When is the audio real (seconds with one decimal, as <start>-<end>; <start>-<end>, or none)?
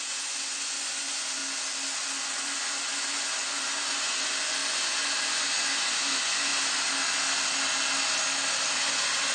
1.4-2.2; 6.5-8.7